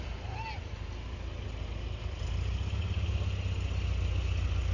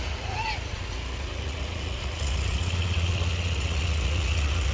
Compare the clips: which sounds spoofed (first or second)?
second